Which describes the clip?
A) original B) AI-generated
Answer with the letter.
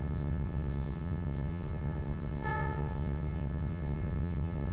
B